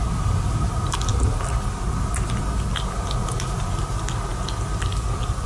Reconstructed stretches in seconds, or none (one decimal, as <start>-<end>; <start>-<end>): none